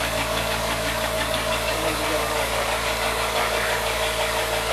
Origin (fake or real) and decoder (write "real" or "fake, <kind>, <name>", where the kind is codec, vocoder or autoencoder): fake, codec, DAC